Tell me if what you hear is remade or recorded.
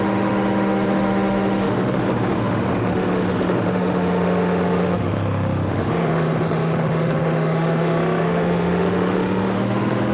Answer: remade